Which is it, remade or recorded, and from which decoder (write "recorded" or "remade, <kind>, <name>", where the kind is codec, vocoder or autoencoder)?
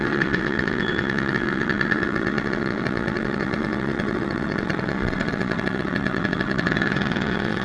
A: remade, vocoder, WaveNeXt